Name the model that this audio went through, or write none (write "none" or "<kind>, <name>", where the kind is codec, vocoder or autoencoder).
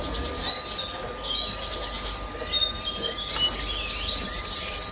none